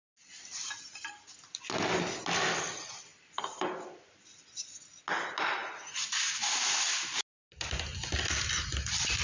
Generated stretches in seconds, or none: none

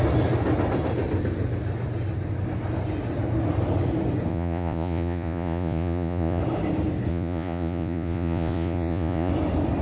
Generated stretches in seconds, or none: 4.3-6.4 (vocoder, Vocos); 7.1-9.3

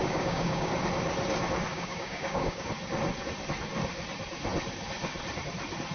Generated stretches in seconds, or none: 0.0-0.7 (codec, DAC); 1.7-2.7